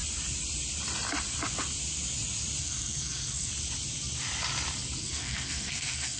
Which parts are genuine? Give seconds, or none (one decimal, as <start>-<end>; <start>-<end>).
0.0-2.6; 3.5-5.0